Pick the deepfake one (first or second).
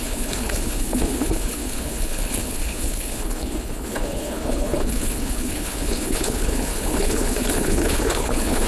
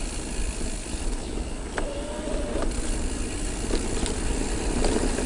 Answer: first